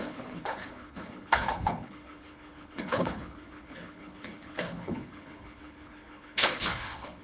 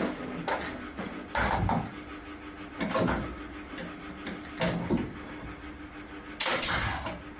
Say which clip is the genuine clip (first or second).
second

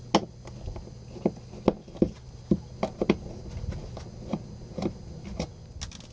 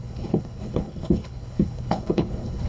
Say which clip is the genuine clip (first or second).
first